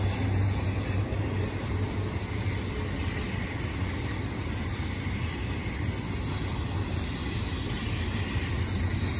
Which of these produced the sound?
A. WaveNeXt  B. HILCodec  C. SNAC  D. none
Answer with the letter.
D